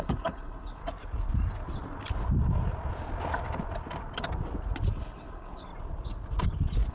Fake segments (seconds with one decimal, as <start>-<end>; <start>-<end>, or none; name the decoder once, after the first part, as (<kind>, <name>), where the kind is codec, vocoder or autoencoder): 0.0-0.8 (codec, HILCodec); 4.9-5.7